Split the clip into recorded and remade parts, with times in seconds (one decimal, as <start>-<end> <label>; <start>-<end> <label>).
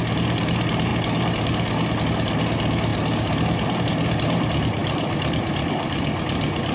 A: 0.0-6.7 recorded